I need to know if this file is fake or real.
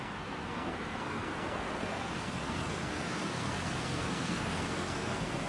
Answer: fake